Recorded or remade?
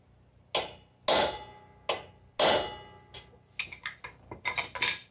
recorded